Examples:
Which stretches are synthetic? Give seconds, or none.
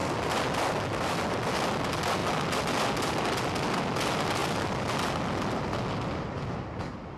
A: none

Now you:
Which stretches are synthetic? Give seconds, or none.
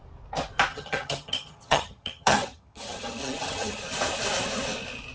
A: 0.7-3.8 (vocoder, HiFi-GAN)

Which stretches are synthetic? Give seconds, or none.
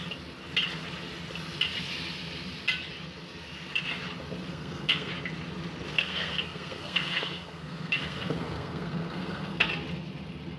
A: 4.5-5.1 (codec, SNAC); 5.9-9.7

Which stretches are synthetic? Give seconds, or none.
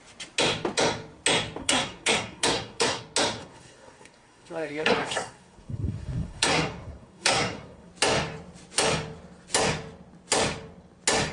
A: 1.6-3.0 (codec, SNAC); 3.4-7.9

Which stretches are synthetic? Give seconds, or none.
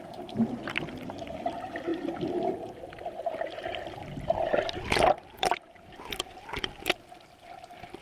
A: none